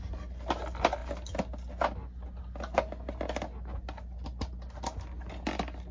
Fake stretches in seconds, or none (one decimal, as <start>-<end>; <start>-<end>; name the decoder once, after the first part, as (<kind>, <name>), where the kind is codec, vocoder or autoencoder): none